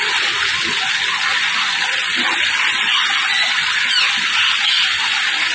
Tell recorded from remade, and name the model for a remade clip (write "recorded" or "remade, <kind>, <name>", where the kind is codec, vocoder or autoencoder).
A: recorded